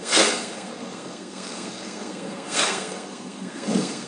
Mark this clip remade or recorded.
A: remade